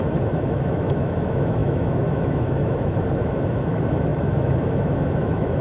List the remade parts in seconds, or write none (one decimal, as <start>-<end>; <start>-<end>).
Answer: 0.0-5.6